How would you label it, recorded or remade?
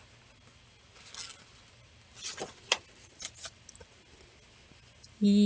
recorded